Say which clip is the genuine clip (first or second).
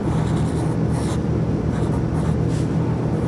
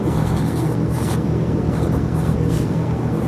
first